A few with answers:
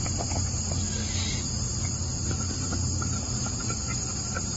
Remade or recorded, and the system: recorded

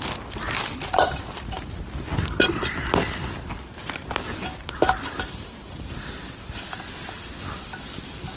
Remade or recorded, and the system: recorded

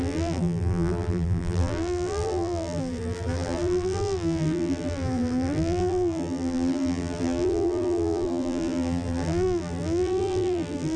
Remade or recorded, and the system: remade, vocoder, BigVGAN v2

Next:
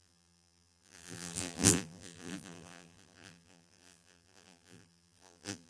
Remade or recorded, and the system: remade, vocoder, BigVGAN v2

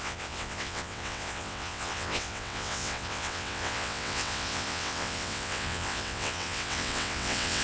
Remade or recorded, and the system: remade, vocoder, WaveNeXt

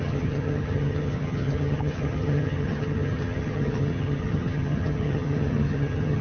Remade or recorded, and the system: remade, vocoder, HiFi-GAN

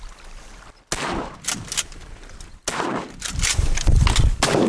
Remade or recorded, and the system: recorded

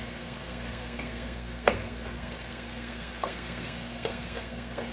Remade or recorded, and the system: remade, codec, SNAC